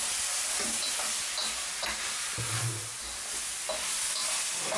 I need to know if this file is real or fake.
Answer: real